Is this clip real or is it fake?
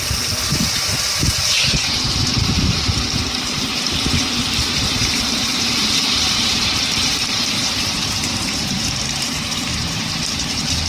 fake